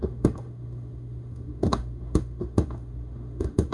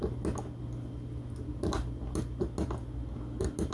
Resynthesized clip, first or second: first